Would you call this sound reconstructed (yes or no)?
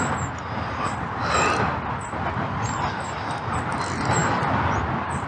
no